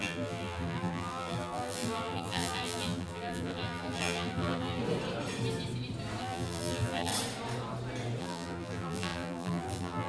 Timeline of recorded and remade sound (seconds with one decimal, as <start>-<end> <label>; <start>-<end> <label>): 0.0-4.8 remade; 4.8-6.2 recorded; 6.2-7.1 remade; 7.1-8.2 recorded; 8.2-10.1 remade